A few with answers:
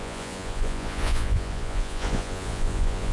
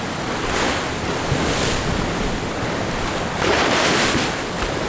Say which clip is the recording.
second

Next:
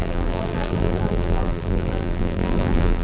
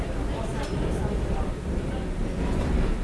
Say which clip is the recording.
second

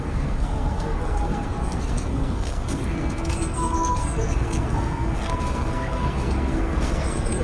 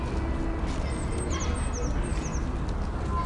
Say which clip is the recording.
second